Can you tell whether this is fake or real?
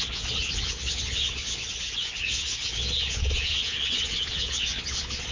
fake